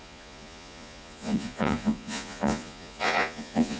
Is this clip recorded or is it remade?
remade